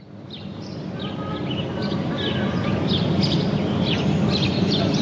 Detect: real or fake real